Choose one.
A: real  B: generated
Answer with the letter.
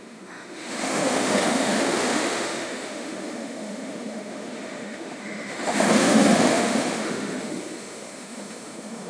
B